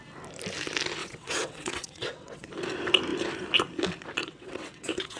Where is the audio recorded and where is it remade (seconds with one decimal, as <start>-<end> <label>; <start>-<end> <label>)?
0.0-1.0 recorded; 1.0-2.5 remade; 2.5-4.2 recorded; 4.2-5.2 remade